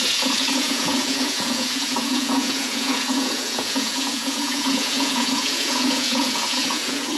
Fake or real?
fake